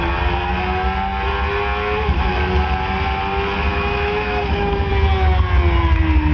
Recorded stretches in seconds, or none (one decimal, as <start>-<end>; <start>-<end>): 0.0-3.7; 4.9-6.3

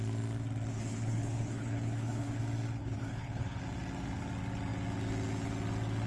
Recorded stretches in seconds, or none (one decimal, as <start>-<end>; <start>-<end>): 0.0-0.7; 2.4-2.8; 3.6-6.1

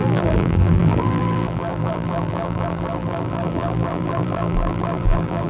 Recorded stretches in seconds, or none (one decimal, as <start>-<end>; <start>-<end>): none

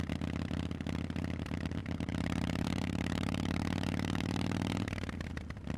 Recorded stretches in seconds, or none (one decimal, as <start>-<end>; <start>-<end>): 0.0-1.8; 5.3-5.8

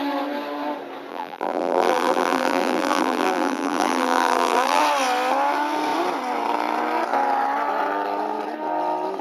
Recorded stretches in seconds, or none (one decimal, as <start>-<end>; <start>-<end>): 0.0-1.1; 4.8-9.2